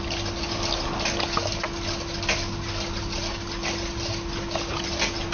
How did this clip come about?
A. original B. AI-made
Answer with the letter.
A